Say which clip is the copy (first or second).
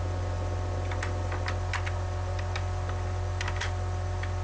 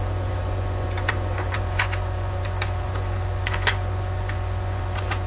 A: second